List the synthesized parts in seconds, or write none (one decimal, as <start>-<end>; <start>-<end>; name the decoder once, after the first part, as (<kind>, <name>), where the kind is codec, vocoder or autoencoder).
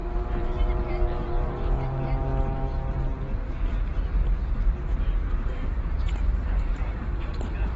0.0-2.3 (vocoder, BigVGAN v2); 4.3-5.6; 6.2-7.8